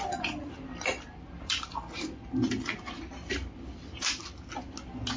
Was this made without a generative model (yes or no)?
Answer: yes